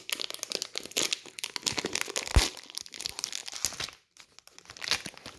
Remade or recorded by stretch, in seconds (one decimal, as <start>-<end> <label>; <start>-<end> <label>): 0.0-5.4 recorded